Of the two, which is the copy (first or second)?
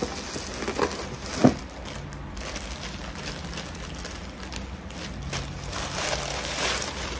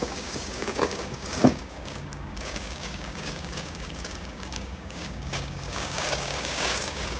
second